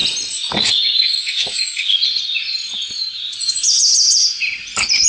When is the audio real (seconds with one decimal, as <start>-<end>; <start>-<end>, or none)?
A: 0.0-0.8; 2.0-5.1